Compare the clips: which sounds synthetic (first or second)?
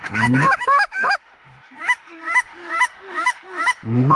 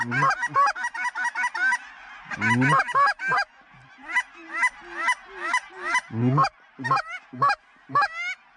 first